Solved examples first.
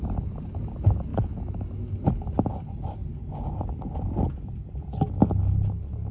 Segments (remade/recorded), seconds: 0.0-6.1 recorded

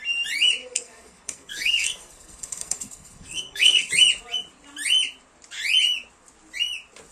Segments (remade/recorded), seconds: 0.0-0.6 recorded; 0.6-3.9 remade; 3.9-7.1 recorded

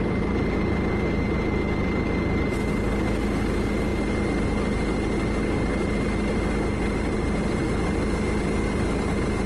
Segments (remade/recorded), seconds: 0.0-9.5 recorded

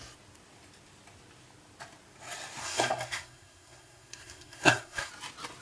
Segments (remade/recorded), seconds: 0.0-2.6 recorded; 2.6-5.1 remade; 5.1-5.6 recorded

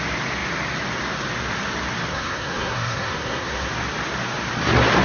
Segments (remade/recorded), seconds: 0.0-2.1 recorded; 2.1-3.7 remade; 3.7-5.0 recorded